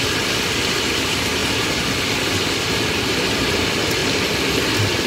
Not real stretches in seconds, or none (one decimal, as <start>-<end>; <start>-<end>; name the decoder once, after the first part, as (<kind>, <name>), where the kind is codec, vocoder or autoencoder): 0.0-1.4 (vocoder, BigVGAN v2); 2.7-4.0; 4.6-5.1